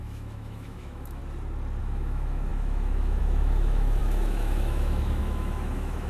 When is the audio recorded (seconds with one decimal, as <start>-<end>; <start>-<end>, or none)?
1.2-1.8